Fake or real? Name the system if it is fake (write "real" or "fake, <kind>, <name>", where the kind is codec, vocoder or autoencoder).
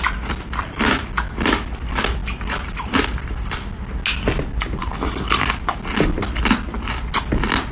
real